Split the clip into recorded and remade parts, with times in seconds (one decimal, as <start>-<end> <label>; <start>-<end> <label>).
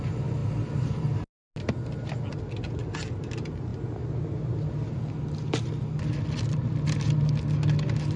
0.0-8.2 recorded